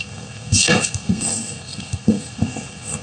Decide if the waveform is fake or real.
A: fake